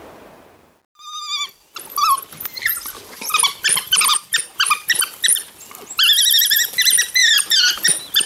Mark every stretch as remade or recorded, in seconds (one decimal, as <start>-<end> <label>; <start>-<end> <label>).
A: 0.0-8.3 recorded